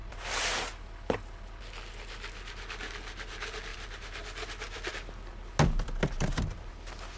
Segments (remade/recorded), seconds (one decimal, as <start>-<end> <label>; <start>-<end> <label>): 0.0-0.5 remade; 0.5-3.7 recorded; 3.7-4.9 remade; 4.9-7.2 recorded

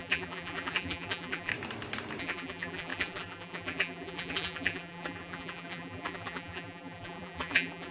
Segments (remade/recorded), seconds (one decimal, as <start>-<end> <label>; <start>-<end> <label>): 0.0-1.5 remade; 1.5-2.2 recorded; 2.2-7.9 remade

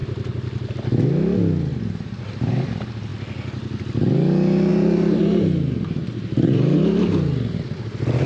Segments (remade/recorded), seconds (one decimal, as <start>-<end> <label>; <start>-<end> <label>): 0.0-1.7 recorded; 1.7-2.6 remade; 2.6-4.7 recorded; 4.7-6.5 remade; 6.5-8.3 recorded

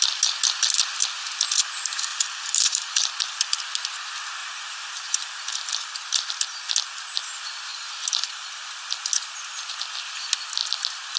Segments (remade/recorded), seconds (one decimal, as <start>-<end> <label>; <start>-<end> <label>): 0.0-2.1 recorded; 2.1-3.2 remade; 3.2-4.4 recorded; 4.4-5.9 remade; 5.9-7.7 recorded; 7.7-8.6 remade; 8.6-11.2 recorded